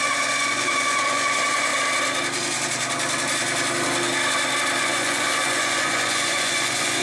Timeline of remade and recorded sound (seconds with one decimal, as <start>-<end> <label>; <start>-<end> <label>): 0.0-1.7 remade; 1.7-4.8 recorded; 4.8-7.0 remade